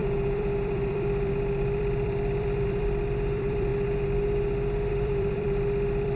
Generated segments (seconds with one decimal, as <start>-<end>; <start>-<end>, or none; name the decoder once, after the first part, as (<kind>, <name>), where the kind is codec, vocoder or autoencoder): 0.0-3.7 (vocoder, BigVGAN v2); 4.9-6.2

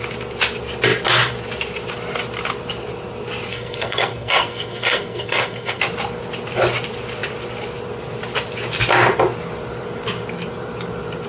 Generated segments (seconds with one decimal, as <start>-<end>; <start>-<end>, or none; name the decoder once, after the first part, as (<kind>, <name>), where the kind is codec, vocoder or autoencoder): 3.5-5.8 (codec, SNAC)